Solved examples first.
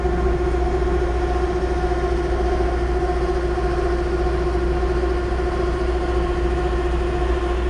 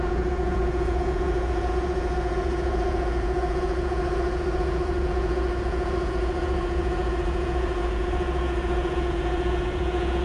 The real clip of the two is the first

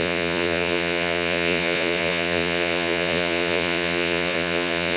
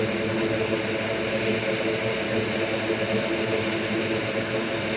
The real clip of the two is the second